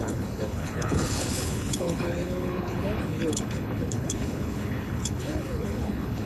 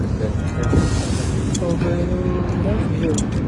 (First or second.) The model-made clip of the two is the first